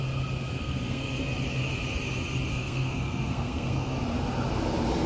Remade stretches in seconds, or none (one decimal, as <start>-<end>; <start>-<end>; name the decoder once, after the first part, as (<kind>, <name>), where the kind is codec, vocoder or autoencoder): 0.5-1.2 (codec, SNAC); 2.5-4.0